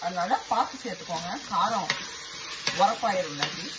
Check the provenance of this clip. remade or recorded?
recorded